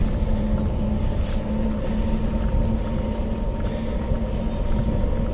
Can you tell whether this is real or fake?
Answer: real